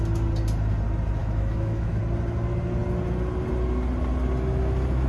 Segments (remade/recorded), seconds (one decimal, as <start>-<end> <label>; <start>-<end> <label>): 0.0-1.2 recorded; 1.2-2.0 remade; 2.0-5.1 recorded